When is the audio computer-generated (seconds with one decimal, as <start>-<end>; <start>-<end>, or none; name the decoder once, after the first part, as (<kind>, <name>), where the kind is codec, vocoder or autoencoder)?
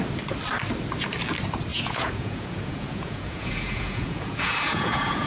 1.7-5.3 (vocoder, Vocos)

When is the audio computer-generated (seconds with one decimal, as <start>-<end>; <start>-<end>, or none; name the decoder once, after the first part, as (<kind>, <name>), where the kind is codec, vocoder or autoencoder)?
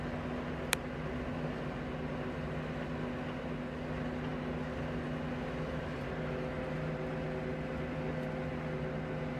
none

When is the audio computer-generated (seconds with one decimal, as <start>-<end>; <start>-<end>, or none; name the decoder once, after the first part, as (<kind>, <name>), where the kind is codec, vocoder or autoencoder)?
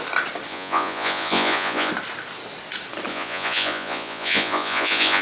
0.5-1.9 (vocoder, Vocos); 3.1-5.2